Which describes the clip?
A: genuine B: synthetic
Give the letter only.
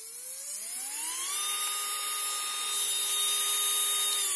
A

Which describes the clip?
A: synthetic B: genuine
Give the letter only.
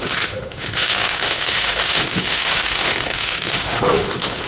A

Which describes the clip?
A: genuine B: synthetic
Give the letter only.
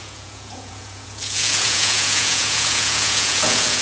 B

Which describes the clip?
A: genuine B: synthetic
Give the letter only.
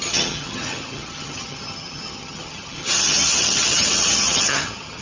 B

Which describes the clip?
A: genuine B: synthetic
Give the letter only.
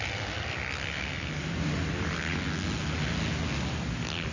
A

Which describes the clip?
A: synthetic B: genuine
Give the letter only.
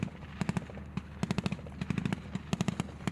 B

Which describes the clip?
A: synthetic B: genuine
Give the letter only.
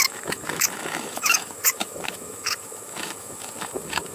A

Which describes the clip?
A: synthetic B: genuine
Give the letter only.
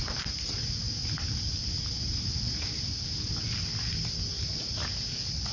B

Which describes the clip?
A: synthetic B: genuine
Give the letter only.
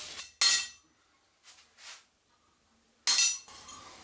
B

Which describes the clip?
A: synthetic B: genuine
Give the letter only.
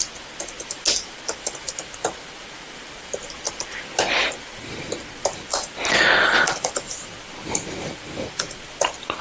B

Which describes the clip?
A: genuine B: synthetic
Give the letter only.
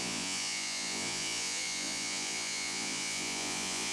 B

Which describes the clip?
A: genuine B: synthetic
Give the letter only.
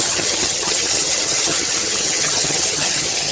B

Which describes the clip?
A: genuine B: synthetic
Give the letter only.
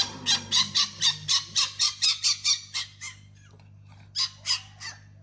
A